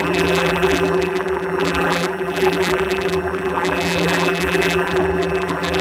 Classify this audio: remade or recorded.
remade